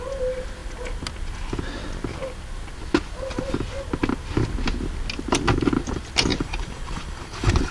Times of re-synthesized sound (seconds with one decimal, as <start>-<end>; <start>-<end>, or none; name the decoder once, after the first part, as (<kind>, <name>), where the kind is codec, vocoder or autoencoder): 6.3-7.7 (vocoder, BigVGAN v2)